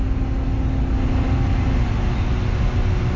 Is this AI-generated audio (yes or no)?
no